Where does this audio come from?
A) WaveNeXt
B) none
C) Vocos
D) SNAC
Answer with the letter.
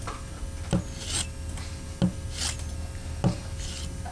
B